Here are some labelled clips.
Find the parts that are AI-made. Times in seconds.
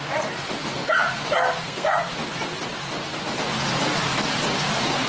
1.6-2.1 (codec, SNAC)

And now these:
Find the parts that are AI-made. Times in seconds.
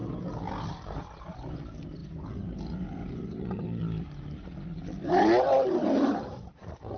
none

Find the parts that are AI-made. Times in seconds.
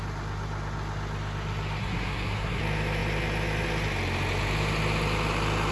1.8-2.6 (codec, SNAC)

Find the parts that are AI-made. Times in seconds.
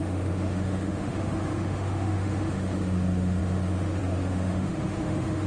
0.0-5.5 (autoencoder, DAC-VAE)